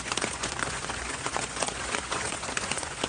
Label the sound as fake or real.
fake